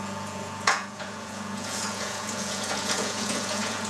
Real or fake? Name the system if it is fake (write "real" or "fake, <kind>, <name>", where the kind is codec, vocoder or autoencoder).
fake, vocoder, Vocos